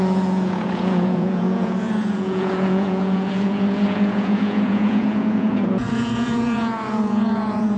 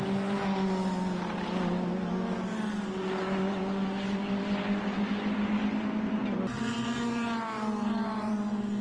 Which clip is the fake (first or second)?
first